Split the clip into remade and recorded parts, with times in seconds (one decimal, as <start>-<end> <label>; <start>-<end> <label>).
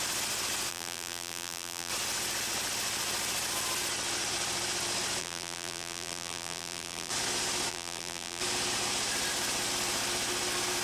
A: 0.0-0.7 recorded; 0.7-1.9 remade; 1.9-5.2 recorded; 5.2-7.1 remade; 7.1-7.7 recorded; 7.7-8.4 remade; 8.4-10.8 recorded